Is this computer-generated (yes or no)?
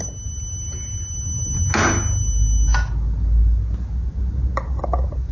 no